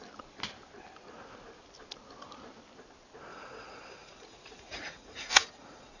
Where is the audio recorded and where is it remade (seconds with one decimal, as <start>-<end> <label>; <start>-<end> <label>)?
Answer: 0.0-3.3 recorded; 3.3-6.0 remade